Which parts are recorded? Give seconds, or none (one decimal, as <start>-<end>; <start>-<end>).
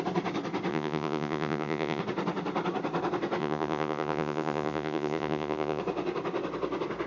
0.0-0.7; 2.0-3.4; 5.8-7.1